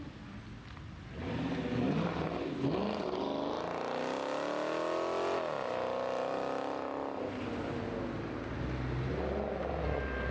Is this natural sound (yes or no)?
yes